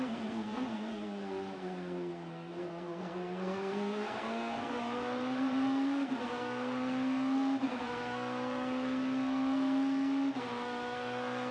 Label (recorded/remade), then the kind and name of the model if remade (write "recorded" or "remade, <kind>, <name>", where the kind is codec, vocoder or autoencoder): remade, codec, SNAC